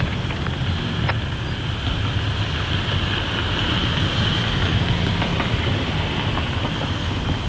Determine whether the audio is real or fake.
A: real